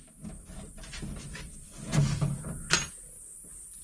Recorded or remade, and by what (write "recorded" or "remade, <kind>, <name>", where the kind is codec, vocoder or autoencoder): recorded